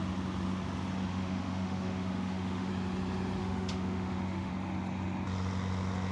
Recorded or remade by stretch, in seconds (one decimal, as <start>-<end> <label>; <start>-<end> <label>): 0.0-1.1 recorded; 1.1-2.7 remade; 2.7-3.4 recorded; 3.4-4.5 remade; 4.5-6.1 recorded